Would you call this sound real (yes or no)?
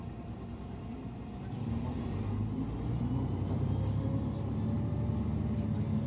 yes